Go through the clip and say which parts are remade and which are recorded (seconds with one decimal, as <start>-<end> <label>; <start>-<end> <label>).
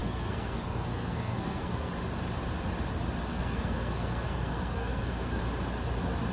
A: 0.0-1.9 remade; 1.9-3.3 recorded; 3.3-5.4 remade; 5.4-6.3 recorded